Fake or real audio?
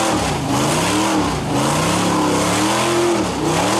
real